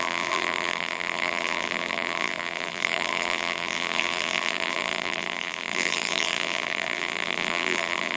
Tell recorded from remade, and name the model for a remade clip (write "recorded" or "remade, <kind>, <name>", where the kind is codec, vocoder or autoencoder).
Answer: remade, vocoder, BigVGAN v2